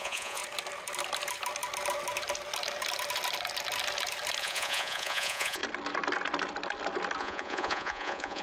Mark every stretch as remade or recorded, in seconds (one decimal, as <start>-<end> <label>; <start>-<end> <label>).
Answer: 0.0-0.4 remade; 0.4-4.4 recorded; 4.4-5.6 remade; 5.6-7.2 recorded; 7.2-8.4 remade